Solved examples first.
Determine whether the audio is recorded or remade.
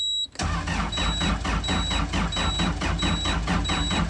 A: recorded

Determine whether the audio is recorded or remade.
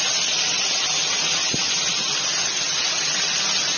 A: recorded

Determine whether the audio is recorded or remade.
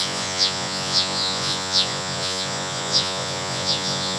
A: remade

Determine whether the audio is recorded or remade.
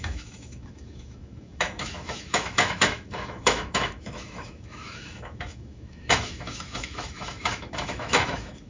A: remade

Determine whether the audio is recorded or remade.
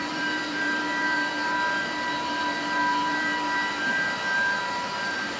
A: remade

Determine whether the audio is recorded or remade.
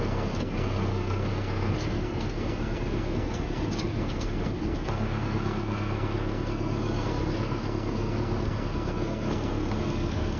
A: remade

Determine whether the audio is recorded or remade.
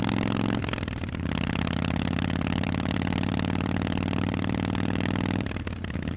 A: remade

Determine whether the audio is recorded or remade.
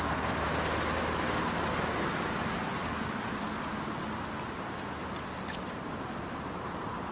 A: recorded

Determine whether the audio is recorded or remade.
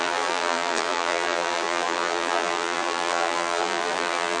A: remade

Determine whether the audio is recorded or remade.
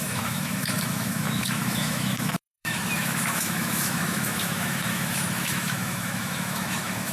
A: remade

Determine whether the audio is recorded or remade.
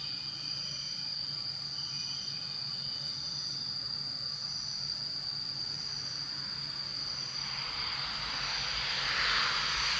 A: recorded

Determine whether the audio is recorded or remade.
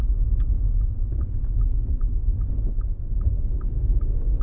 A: remade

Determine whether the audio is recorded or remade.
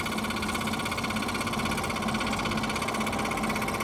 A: recorded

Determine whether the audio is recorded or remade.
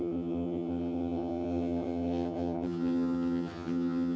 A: remade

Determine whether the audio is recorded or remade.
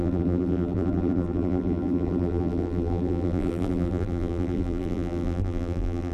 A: remade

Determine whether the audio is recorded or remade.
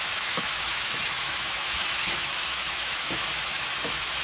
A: remade